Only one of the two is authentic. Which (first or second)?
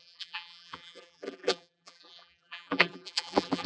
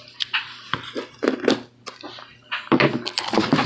second